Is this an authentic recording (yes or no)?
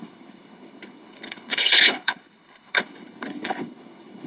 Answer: no